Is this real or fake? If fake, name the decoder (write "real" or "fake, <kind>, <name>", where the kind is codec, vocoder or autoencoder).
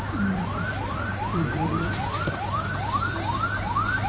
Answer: fake, vocoder, BigVGAN v2